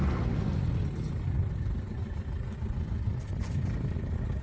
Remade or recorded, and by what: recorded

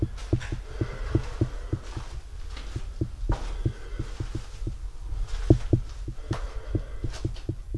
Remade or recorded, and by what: recorded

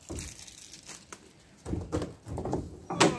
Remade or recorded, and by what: recorded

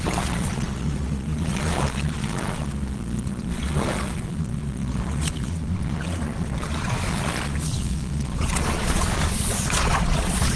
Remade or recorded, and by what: remade, vocoder, Vocos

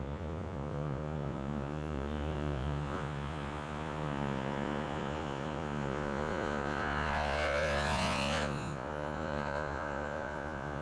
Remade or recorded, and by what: remade, vocoder, Vocos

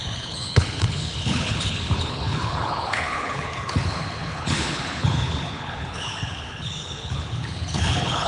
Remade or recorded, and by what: remade, codec, HILCodec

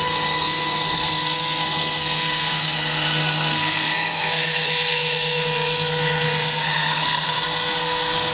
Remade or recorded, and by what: remade, codec, SNAC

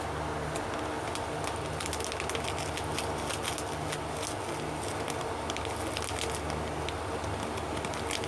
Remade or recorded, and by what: recorded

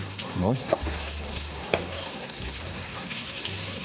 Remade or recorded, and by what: remade, codec, SNAC